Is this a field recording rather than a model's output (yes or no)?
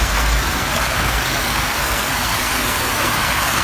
no